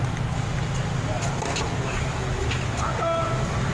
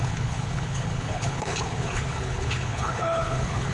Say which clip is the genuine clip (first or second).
first